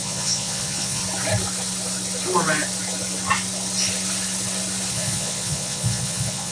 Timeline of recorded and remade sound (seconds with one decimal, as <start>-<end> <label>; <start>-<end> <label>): 0.0-1.0 remade; 1.0-4.9 recorded; 4.9-6.5 remade